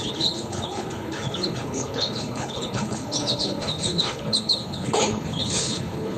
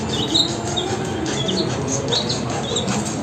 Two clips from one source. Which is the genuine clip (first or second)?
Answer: second